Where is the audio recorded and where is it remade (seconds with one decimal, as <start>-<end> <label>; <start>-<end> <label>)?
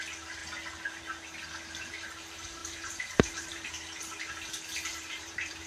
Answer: 0.0-2.6 recorded; 2.6-3.7 remade; 3.7-4.9 recorded; 4.9-5.7 remade